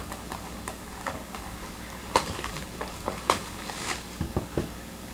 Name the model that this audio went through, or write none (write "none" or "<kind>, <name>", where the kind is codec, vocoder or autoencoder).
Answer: codec, DAC